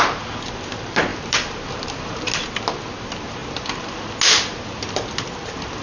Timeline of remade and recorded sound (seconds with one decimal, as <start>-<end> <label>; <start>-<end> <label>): 0.0-1.1 recorded; 1.1-2.3 remade; 2.3-5.8 recorded